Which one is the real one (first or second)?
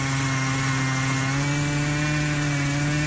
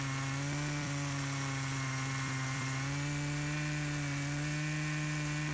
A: first